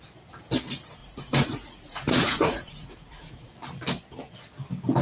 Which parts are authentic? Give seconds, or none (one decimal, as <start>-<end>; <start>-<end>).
0.0-1.0; 3.5-5.0